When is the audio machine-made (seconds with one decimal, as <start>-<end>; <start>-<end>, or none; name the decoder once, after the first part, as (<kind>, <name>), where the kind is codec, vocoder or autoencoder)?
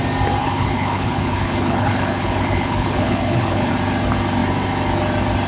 0.4-3.7 (codec, HILCodec)